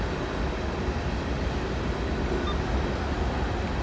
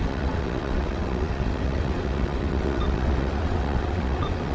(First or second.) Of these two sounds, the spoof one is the second